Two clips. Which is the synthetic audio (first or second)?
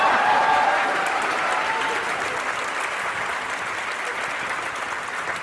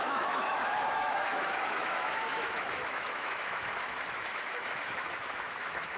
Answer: second